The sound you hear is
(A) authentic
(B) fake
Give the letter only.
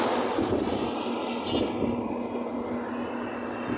A